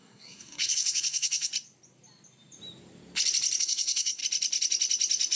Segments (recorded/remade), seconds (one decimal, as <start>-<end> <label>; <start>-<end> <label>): 0.0-1.5 remade; 1.5-3.6 recorded; 3.6-4.2 remade; 4.2-5.4 recorded